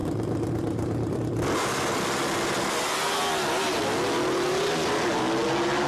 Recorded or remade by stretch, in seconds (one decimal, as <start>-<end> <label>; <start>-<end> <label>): 0.0-5.9 recorded

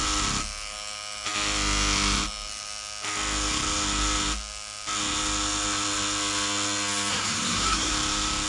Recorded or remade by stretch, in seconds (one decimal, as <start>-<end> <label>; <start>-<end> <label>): 0.0-7.1 recorded; 7.1-7.9 remade; 7.9-8.5 recorded

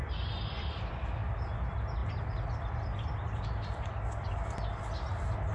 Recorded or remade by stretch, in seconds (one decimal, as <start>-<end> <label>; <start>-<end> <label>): 0.0-5.5 recorded

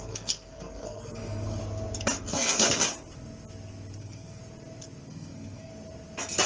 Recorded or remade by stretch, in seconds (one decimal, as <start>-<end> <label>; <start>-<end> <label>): 0.0-1.6 remade; 1.6-2.3 recorded; 2.3-2.8 remade; 2.8-4.0 recorded; 4.0-4.4 remade; 4.4-5.1 recorded; 5.1-5.7 remade; 5.7-6.5 recorded

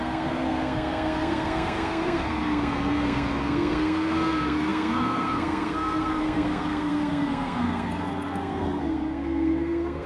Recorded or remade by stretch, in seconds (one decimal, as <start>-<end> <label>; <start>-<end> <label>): 0.0-10.1 remade